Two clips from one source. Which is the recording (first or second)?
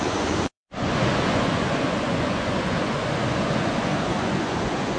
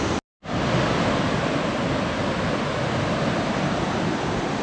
second